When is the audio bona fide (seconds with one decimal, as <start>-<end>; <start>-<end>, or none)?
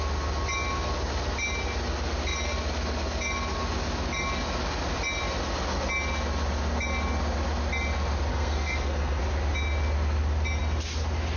0.0-8.3; 9.2-11.4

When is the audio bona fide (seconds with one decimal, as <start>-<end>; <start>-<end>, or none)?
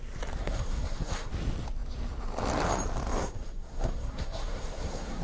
0.0-0.4; 1.3-3.2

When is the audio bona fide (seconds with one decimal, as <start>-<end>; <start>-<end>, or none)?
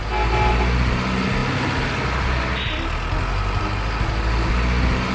0.0-5.1